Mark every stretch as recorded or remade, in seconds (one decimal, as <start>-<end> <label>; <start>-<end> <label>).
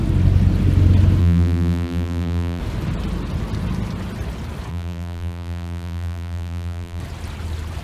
0.0-1.2 recorded; 1.2-2.6 remade; 2.6-4.7 recorded; 4.7-7.0 remade; 7.0-7.8 recorded